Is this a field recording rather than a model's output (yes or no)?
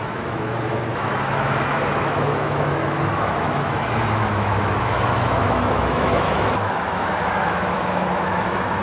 no